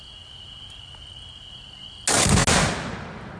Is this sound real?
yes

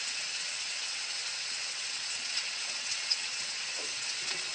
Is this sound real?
no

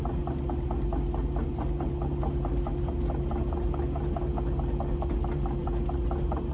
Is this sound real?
yes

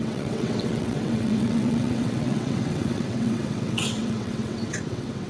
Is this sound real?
no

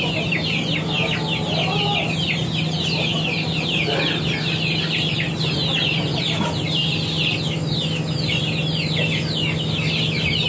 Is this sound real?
yes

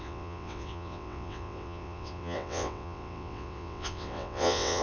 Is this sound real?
no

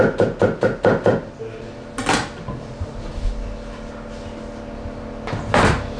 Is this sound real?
yes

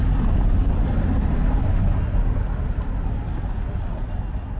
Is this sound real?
yes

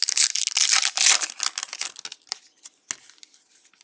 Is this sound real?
yes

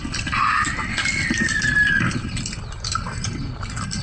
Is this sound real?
yes